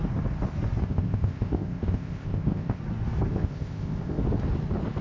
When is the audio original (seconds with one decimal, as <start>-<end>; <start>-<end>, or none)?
0.0-0.8; 2.8-3.3; 4.2-5.0